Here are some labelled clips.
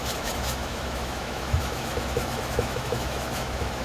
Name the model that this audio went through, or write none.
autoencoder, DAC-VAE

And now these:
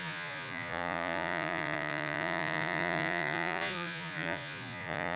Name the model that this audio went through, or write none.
vocoder, Vocos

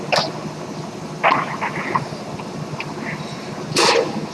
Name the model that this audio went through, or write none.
none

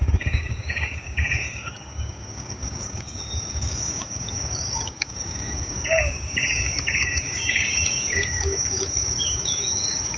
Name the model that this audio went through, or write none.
codec, DAC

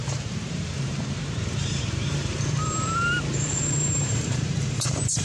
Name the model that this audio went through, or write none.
vocoder, BigVGAN v2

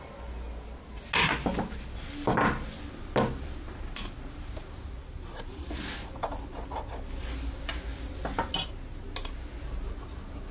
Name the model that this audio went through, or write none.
none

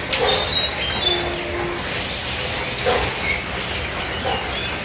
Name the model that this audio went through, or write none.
none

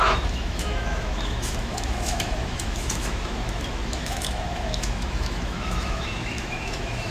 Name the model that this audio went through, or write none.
autoencoder, DAC-VAE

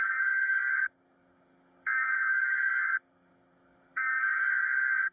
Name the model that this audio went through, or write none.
codec, DAC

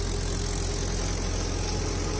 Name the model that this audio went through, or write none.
none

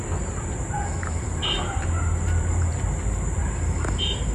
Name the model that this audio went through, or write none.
none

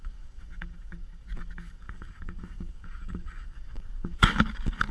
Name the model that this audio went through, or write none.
codec, DAC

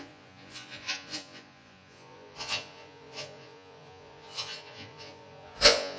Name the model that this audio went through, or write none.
vocoder, Vocos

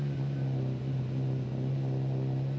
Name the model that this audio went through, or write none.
none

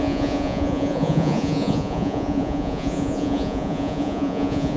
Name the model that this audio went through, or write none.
vocoder, Vocos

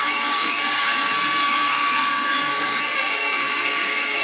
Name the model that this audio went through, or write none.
codec, SNAC